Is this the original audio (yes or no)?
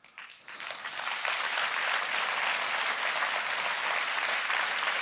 yes